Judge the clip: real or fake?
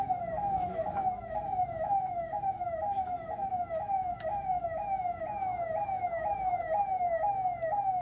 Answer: fake